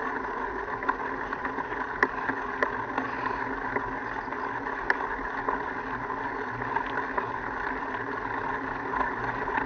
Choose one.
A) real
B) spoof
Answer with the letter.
A